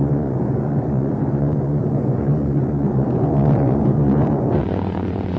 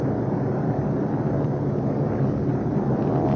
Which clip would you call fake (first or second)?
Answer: first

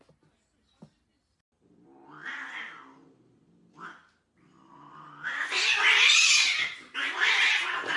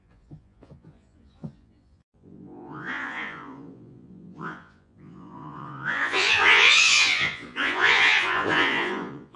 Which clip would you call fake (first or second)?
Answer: second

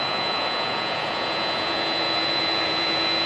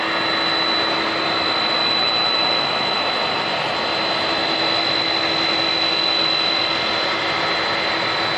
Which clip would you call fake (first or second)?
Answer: first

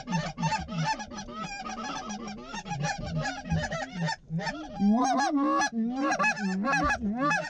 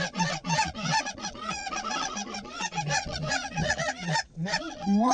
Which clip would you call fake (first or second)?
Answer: second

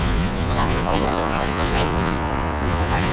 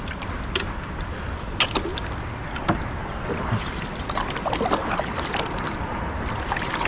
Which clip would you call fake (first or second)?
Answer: first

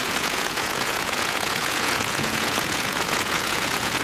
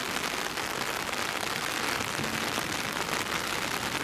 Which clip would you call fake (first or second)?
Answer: first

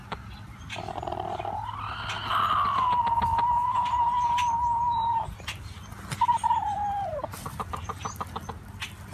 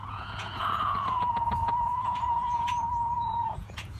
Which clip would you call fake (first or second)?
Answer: second